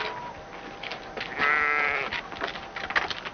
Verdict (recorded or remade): recorded